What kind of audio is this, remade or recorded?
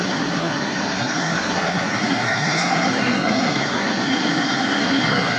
remade